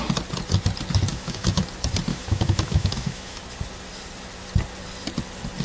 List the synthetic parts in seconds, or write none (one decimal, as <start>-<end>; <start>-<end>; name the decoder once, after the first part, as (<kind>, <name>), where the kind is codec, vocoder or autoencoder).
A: 1.1-1.6 (autoencoder, DAC-VAE); 2.1-3.4